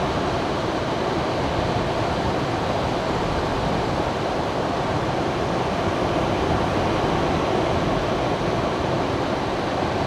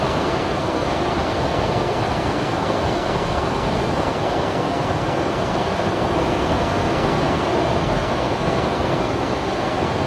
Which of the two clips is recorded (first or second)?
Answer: first